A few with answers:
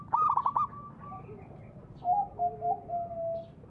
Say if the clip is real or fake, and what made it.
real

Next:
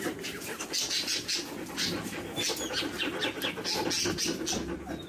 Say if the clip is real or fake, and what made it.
real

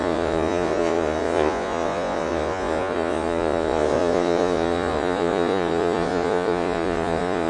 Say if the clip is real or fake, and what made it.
fake, vocoder, Vocos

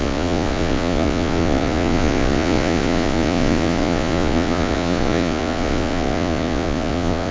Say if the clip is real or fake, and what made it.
fake, vocoder, Vocos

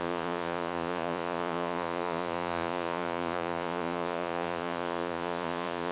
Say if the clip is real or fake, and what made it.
fake, vocoder, Vocos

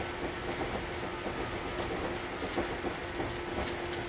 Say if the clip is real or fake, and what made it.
real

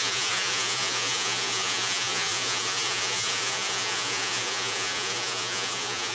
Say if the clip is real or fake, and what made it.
fake, vocoder, Vocos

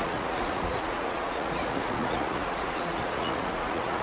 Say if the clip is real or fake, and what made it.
fake, vocoder, Vocos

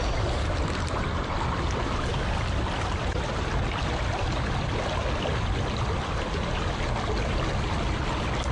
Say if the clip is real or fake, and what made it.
real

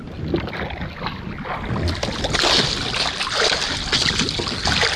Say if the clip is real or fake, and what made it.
real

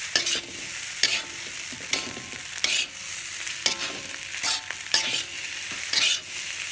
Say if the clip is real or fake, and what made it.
real